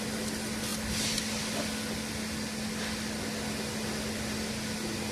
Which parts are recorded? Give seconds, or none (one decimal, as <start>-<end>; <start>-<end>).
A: 0.0-5.1